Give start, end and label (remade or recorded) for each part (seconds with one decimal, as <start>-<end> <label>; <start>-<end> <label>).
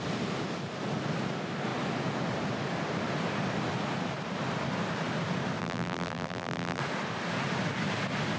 0.0-5.6 recorded; 5.6-6.8 remade; 6.8-8.4 recorded